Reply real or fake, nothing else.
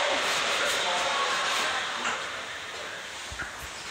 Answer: fake